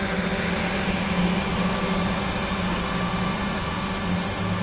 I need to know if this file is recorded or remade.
recorded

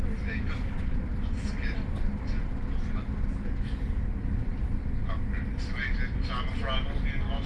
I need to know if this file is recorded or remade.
recorded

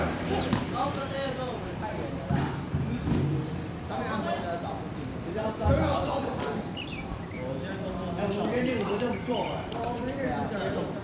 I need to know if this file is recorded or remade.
remade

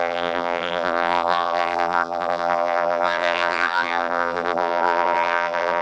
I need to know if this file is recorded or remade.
remade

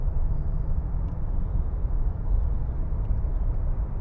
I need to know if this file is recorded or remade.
remade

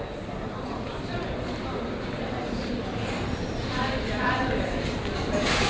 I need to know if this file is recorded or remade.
remade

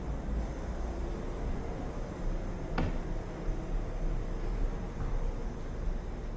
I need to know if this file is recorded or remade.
recorded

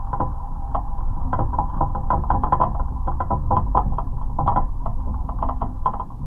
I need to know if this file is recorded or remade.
recorded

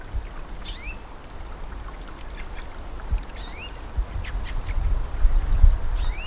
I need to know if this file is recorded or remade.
recorded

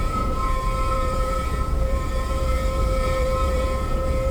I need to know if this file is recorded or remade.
remade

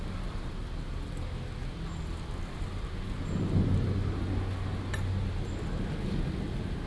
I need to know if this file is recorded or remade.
recorded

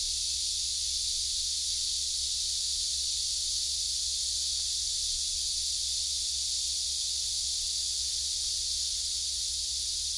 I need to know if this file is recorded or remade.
recorded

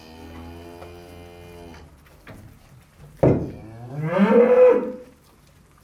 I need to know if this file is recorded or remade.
recorded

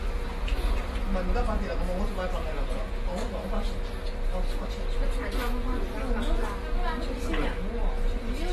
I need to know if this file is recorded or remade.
recorded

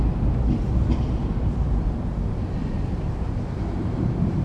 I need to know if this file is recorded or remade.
recorded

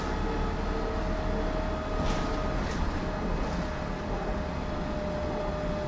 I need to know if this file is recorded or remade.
recorded